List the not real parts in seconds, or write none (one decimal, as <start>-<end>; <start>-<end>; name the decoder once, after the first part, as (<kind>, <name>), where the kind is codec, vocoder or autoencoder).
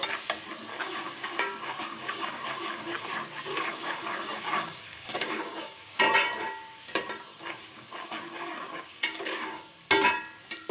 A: 0.7-3.1 (codec, DAC); 3.5-6.0; 7.3-9.6